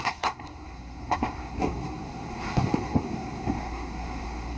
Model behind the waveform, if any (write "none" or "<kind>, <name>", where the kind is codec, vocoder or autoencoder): codec, SNAC